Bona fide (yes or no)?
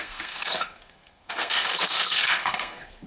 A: no